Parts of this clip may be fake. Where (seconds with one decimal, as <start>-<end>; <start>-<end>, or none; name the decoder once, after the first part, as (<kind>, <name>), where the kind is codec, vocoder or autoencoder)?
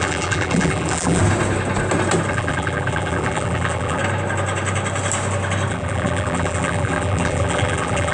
0.0-1.2 (vocoder, BigVGAN v2); 2.3-4.0; 5.7-8.1